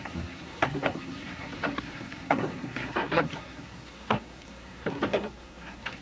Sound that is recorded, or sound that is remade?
remade